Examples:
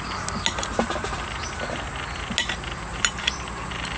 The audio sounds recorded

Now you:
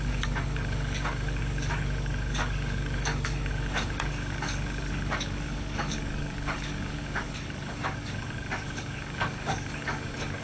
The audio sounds remade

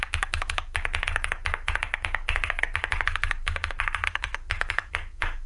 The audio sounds remade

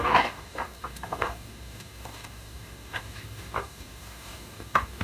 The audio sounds remade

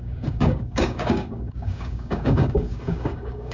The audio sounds remade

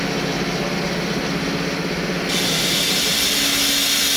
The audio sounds recorded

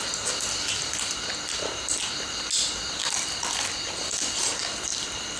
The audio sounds recorded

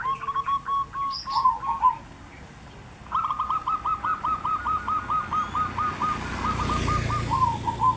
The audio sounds recorded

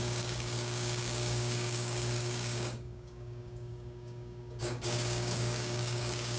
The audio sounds remade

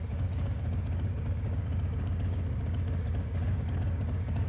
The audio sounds remade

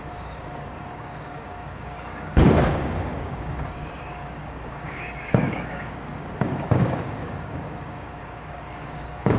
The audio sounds remade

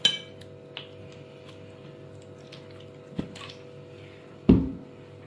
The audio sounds recorded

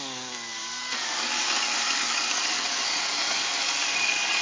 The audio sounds remade